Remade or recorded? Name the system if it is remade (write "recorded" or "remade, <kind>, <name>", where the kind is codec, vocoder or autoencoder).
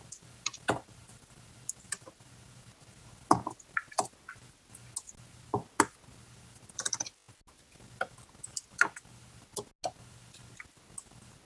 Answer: recorded